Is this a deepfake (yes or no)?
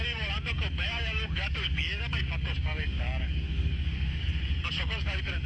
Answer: yes